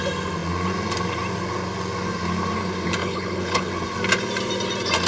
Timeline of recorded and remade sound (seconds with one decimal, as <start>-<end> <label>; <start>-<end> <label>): 0.0-3.0 recorded; 3.0-3.7 remade; 3.7-5.1 recorded